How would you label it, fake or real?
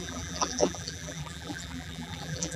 fake